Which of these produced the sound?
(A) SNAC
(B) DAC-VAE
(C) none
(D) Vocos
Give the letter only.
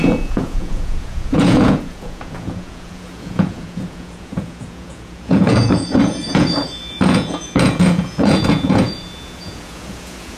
D